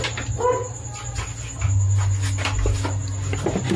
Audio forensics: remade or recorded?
recorded